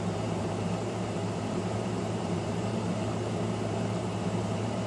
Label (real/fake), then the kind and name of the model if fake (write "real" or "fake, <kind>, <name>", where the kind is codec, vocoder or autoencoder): fake, vocoder, BigVGAN v2